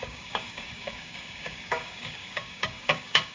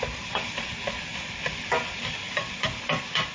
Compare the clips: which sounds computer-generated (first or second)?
first